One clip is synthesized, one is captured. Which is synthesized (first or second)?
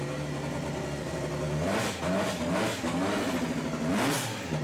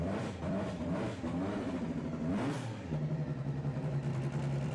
second